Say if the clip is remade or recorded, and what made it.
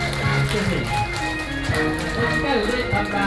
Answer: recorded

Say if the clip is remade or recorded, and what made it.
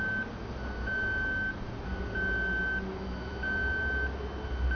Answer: recorded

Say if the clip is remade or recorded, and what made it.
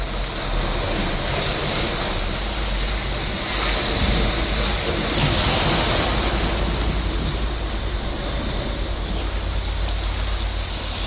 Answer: recorded